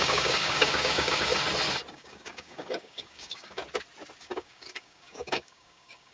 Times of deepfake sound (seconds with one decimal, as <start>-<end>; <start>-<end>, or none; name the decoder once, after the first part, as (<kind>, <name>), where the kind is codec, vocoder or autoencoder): 0.0-1.3 (codec, DAC); 1.9-3.6; 4.2-6.1